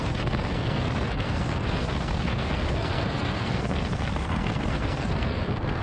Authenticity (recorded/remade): remade